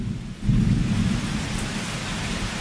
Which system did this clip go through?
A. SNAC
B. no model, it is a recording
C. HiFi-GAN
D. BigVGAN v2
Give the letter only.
B